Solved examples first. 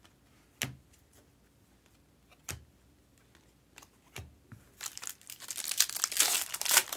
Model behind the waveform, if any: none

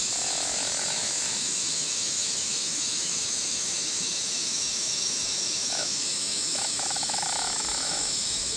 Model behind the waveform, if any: autoencoder, DAC-VAE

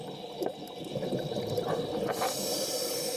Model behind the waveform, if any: none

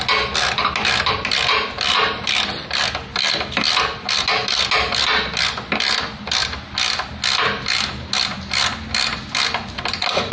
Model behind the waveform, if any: none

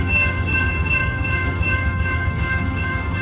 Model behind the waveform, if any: autoencoder, DAC-VAE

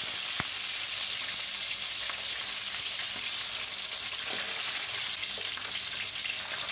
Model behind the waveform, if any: none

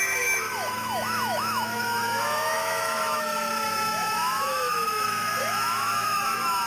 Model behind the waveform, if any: autoencoder, DAC-VAE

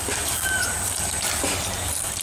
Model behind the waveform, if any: none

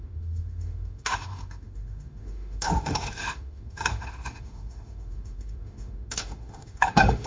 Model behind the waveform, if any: autoencoder, DAC-VAE